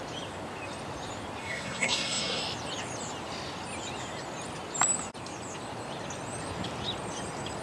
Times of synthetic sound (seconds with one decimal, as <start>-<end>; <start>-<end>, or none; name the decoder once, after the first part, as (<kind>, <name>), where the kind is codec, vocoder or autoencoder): 1.4-2.4 (codec, SNAC)